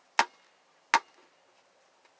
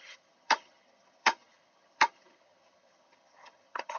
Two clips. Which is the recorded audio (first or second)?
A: first